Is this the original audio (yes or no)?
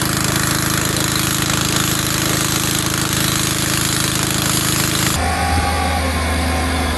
yes